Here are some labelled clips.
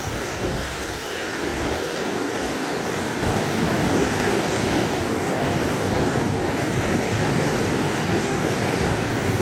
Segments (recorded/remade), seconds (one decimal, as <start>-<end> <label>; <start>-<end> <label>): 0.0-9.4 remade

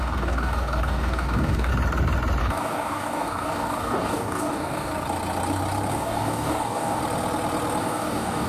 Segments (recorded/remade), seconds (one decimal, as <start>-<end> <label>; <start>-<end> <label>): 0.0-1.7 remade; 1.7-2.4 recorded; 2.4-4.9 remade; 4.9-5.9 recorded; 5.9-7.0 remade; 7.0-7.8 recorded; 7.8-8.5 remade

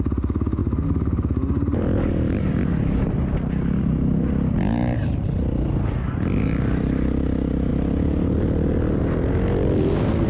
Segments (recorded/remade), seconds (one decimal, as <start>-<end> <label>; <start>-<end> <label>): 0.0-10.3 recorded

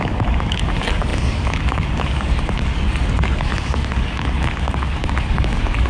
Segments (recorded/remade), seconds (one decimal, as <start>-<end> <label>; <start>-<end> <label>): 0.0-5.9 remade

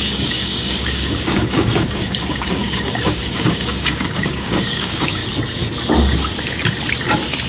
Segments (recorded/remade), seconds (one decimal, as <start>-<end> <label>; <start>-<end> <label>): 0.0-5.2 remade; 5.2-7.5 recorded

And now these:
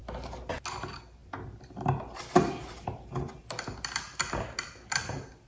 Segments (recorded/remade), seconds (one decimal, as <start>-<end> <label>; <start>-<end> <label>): 0.0-5.5 recorded

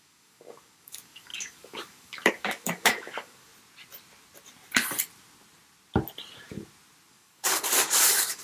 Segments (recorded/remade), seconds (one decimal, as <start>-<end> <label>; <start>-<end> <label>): 0.0-3.5 remade; 3.5-7.1 recorded; 7.1-8.4 remade